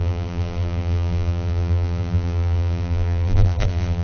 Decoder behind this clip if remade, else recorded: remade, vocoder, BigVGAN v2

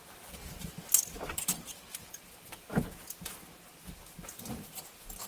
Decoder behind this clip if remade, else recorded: recorded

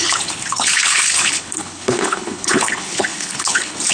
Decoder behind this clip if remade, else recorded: remade, codec, HILCodec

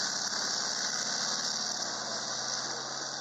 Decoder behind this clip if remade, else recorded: recorded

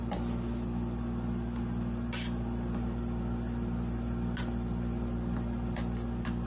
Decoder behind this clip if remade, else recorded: recorded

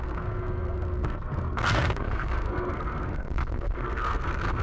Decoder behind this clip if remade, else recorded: remade, codec, SNAC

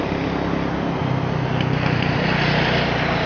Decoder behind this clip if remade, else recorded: recorded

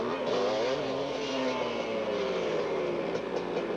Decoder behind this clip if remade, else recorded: recorded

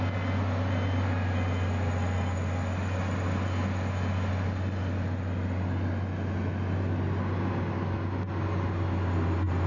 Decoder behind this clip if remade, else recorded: recorded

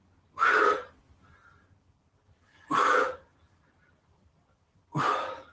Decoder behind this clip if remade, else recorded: recorded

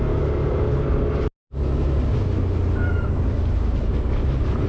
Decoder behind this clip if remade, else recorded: recorded